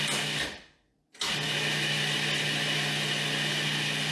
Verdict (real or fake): real